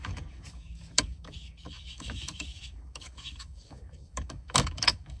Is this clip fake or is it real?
fake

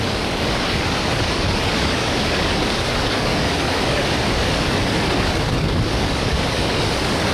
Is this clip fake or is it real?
fake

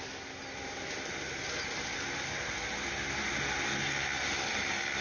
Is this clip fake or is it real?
real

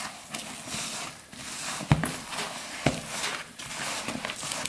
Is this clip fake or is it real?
real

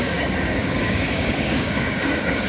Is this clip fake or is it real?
fake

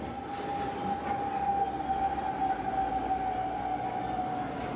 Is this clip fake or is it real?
real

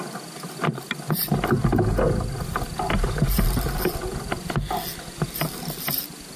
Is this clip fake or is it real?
real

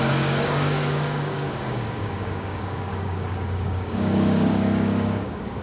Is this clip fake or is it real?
fake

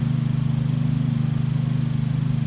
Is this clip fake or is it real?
real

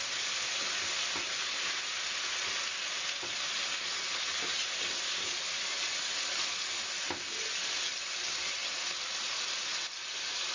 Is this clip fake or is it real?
real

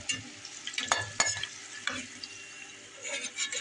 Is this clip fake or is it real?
real